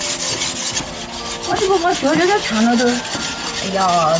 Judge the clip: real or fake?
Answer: real